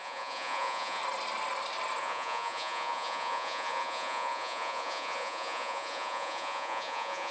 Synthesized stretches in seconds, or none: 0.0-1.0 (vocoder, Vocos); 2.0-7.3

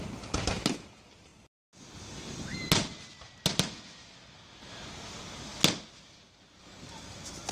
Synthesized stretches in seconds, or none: none

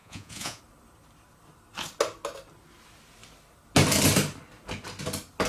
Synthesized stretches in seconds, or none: 0.0-0.6 (vocoder, Vocos)

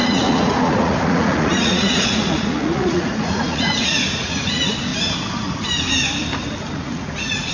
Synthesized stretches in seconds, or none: 0.0-4.9 (vocoder, Vocos); 6.7-7.5

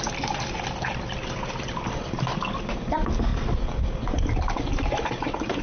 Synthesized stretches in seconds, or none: none

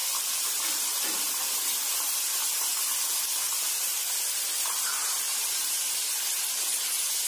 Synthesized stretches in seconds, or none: 0.0-4.4 (vocoder, BigVGAN v2); 4.9-5.4

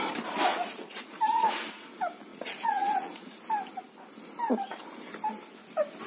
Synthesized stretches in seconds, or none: 0.5-1.9 (vocoder, Vocos); 2.3-3.4